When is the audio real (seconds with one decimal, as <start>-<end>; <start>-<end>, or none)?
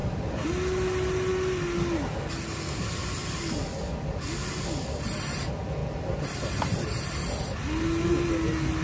0.0-8.8